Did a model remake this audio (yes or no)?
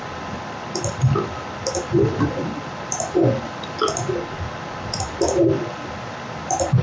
no